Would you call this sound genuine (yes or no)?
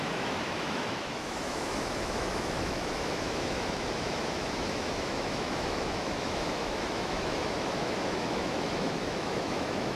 no